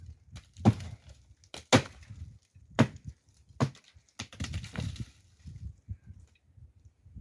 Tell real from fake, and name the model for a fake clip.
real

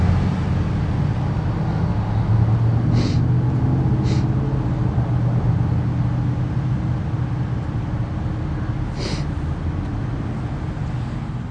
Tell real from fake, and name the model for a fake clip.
real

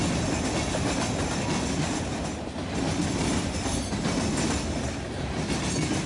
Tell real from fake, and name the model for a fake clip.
real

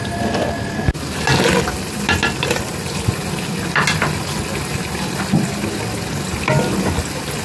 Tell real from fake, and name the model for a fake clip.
real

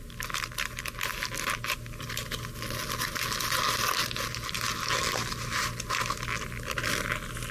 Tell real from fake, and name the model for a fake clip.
real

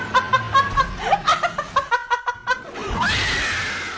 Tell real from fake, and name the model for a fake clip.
real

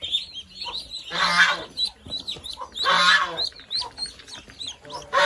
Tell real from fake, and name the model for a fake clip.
real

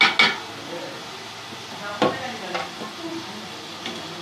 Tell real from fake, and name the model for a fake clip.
real